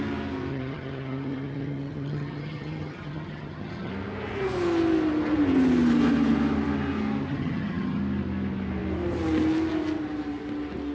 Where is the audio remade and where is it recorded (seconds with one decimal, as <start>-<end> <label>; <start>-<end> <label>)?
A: 0.0-0.5 recorded; 0.5-3.9 remade; 3.9-7.3 recorded; 7.3-8.0 remade; 8.0-10.9 recorded